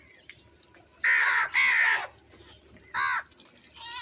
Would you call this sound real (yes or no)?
yes